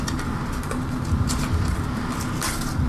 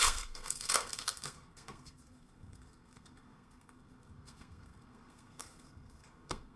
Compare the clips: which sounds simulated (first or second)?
second